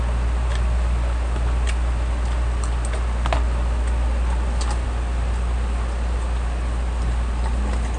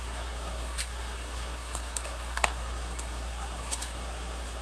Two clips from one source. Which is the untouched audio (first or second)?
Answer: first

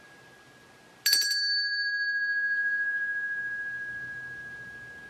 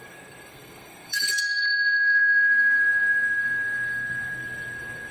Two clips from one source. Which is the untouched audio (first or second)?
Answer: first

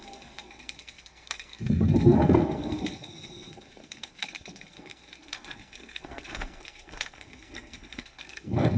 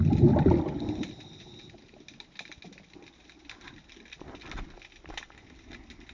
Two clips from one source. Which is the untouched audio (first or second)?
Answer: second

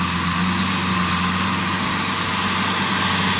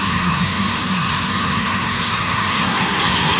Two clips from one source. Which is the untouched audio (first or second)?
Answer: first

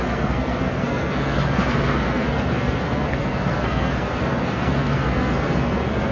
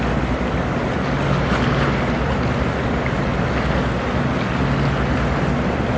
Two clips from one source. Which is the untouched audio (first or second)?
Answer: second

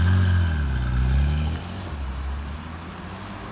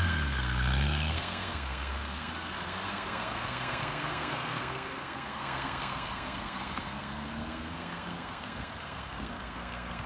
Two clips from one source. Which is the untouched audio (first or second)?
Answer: first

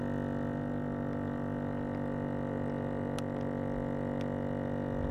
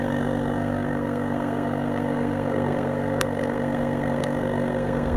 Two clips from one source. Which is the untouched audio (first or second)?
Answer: first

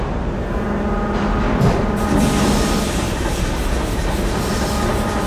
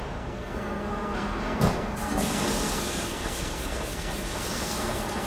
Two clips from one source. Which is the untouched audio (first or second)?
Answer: first